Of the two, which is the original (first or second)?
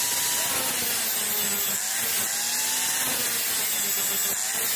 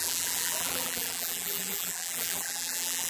first